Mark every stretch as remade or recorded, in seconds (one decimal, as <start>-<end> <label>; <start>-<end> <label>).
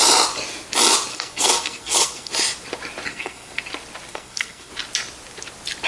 0.0-1.1 recorded; 1.1-2.3 remade; 2.3-3.1 recorded; 3.1-3.6 remade; 3.6-4.1 recorded; 4.1-4.7 remade; 4.7-5.9 recorded